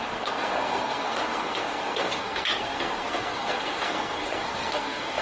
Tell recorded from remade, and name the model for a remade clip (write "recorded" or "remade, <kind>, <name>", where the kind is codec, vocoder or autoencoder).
remade, codec, SNAC